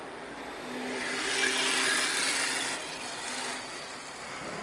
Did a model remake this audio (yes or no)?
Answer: no